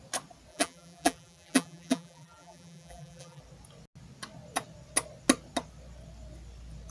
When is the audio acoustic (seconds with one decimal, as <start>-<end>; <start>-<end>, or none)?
0.0-0.5; 3.4-6.9